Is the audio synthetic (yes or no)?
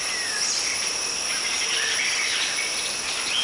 no